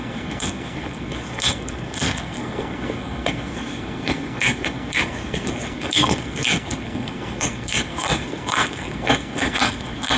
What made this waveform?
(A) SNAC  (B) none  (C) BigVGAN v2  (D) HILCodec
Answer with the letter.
A